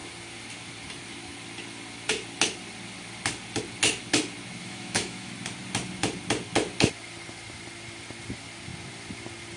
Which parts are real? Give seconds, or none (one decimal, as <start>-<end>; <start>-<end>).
0.0-4.6; 5.3-9.6